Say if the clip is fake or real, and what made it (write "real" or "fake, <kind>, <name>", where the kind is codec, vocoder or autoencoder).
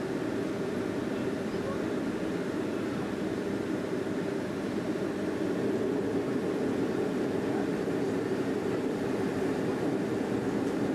real